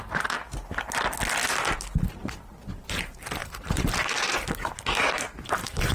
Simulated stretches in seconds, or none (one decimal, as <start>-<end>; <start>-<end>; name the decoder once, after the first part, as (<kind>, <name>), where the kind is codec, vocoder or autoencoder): 1.4-2.6 (vocoder, BigVGAN v2); 3.4-5.9